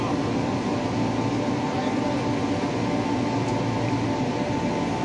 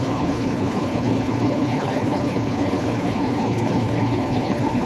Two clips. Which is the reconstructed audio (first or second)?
second